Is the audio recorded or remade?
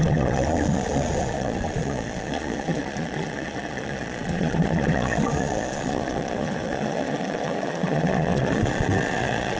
remade